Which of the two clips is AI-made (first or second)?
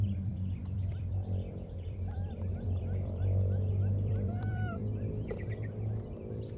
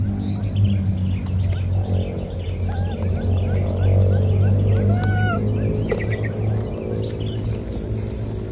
first